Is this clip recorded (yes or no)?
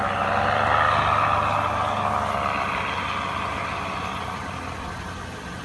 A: yes